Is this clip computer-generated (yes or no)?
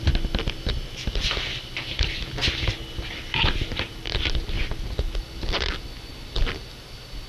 no